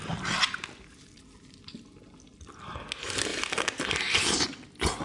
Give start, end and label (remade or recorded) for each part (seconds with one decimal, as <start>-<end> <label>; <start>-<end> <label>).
0.0-5.0 recorded